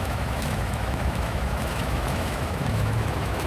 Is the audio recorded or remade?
remade